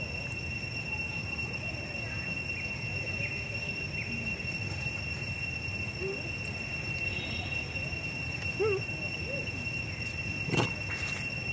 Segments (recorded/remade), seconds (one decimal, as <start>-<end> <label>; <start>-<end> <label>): 0.0-6.7 recorded; 6.7-8.4 remade; 8.4-11.5 recorded